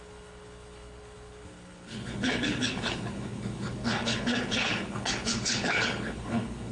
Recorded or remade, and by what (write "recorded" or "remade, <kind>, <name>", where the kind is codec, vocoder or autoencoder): remade, codec, HILCodec